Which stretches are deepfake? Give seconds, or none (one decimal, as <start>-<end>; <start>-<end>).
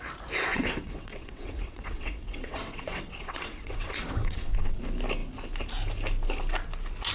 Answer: 0.5-4.8